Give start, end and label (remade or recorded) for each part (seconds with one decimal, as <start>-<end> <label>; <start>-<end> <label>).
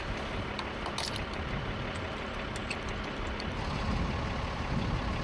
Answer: 0.0-5.2 recorded